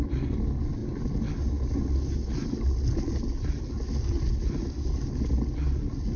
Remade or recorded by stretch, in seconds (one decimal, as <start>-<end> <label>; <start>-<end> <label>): 0.0-6.2 recorded